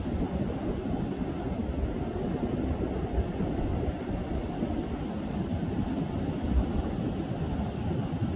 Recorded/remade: recorded